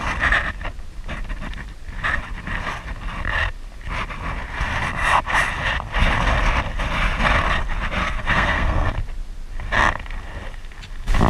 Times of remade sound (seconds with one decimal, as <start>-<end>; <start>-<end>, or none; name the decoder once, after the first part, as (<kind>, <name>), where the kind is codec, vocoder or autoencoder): 8.0-8.9 (codec, SNAC)